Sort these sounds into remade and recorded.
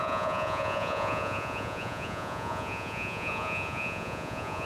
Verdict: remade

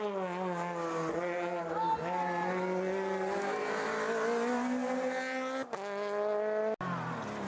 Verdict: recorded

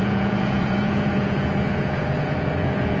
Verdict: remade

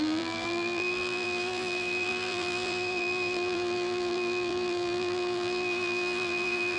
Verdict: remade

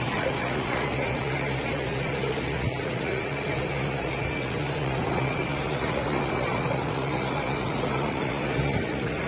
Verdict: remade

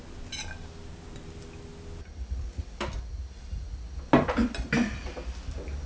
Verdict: recorded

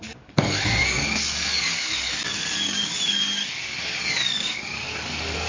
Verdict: remade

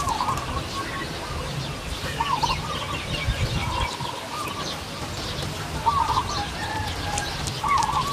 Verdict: recorded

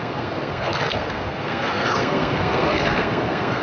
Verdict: remade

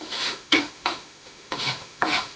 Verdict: remade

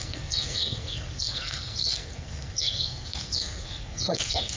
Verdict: remade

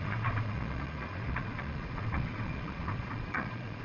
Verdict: remade